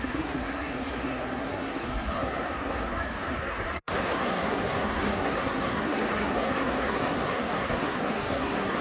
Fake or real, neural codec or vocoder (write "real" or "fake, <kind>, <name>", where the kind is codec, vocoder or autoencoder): fake, codec, SNAC